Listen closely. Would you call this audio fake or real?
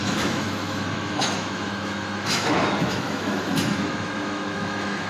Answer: fake